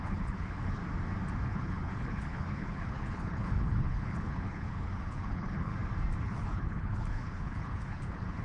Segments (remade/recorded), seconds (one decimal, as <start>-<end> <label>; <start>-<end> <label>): 0.0-0.8 remade; 0.8-1.5 recorded; 1.5-5.7 remade; 5.7-6.2 recorded; 6.2-8.4 remade